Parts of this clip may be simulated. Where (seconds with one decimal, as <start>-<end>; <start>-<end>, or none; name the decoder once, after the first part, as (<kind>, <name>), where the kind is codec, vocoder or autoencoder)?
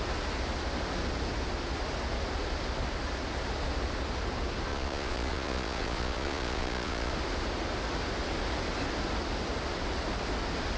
4.7-7.1 (vocoder, Vocos)